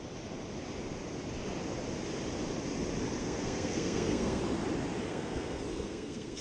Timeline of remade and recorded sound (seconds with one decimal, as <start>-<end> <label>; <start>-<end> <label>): 0.0-3.2 recorded; 3.2-4.4 remade; 4.4-5.1 recorded; 5.1-6.4 remade